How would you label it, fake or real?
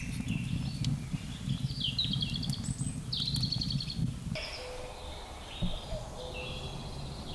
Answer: real